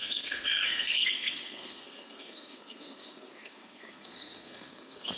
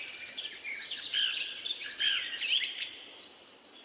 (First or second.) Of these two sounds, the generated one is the first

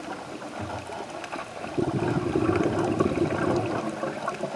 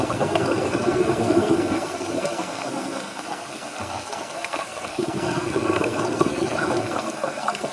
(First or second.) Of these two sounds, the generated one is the second